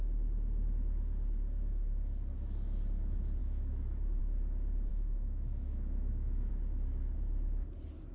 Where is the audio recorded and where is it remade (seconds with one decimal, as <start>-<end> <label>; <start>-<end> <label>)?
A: 0.0-3.4 recorded; 3.4-4.2 remade; 4.2-4.9 recorded; 4.9-6.5 remade; 6.5-8.1 recorded